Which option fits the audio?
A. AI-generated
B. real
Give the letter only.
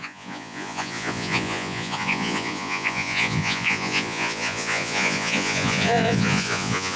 A